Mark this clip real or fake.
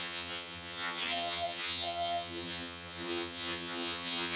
fake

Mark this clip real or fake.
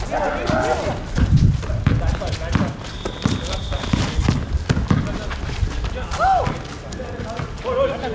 real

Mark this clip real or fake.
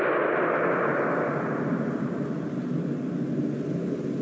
real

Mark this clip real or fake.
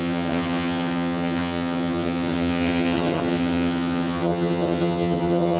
fake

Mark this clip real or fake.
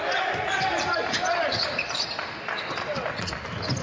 real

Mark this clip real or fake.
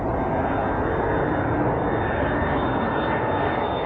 real